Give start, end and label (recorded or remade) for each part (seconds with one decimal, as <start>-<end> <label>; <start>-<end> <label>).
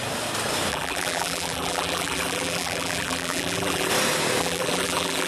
0.0-0.7 recorded; 0.7-3.9 remade; 3.9-4.4 recorded; 4.4-5.3 remade